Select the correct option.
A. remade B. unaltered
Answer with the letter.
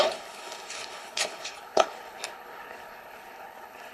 A